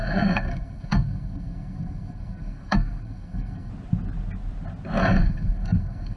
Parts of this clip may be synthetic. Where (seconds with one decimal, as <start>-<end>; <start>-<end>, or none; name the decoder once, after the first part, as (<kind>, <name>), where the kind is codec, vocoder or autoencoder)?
0.0-3.7 (codec, SNAC); 5.0-6.2